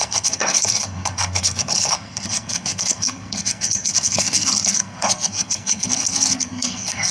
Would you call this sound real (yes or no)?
no